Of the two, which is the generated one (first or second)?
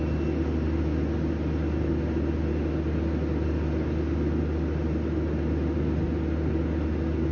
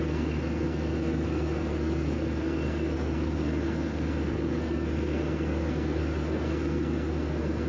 second